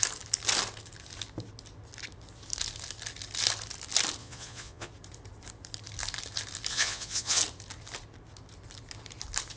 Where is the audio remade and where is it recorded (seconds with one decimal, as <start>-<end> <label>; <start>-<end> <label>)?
0.0-4.2 recorded; 4.2-4.9 remade; 4.9-6.7 recorded; 6.7-7.4 remade; 7.4-9.6 recorded

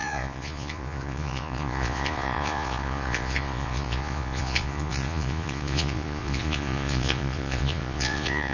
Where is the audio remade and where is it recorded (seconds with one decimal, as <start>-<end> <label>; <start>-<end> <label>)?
0.0-8.5 remade

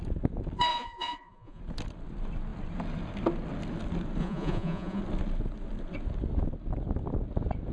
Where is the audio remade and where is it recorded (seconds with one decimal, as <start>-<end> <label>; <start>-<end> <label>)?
0.0-0.7 recorded; 0.7-1.6 remade; 1.6-4.2 recorded; 4.2-5.0 remade; 5.0-7.7 recorded

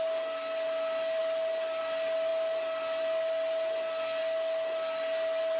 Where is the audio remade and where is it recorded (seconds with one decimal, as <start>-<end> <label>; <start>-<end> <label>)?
0.0-5.6 recorded

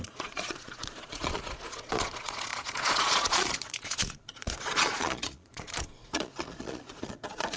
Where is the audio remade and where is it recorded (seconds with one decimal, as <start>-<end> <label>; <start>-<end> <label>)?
0.0-7.6 remade